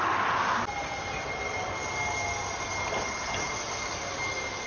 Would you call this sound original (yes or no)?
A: yes